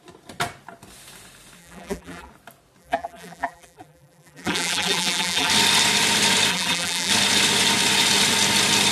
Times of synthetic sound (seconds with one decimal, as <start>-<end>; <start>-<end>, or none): 1.6-2.3; 2.8-5.5; 6.5-7.1